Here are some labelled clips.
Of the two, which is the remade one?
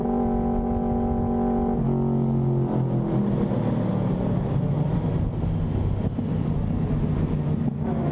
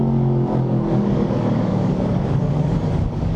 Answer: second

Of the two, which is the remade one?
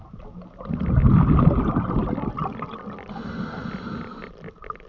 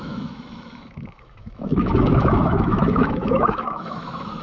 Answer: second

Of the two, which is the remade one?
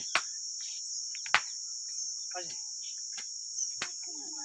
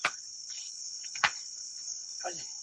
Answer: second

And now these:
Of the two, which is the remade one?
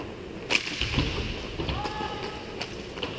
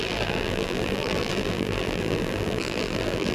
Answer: second